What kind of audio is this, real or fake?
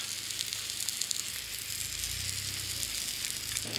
real